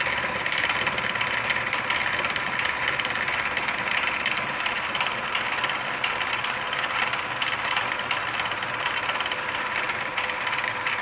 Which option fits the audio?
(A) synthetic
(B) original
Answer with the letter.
B